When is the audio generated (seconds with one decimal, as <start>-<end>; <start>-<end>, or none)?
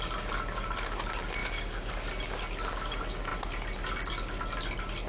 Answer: 1.4-1.9